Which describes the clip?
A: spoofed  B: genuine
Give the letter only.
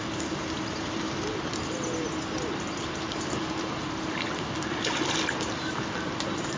B